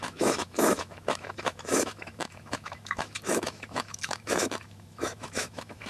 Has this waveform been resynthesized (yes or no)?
yes